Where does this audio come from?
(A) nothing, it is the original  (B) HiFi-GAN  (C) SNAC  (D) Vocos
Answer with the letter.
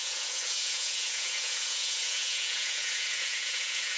D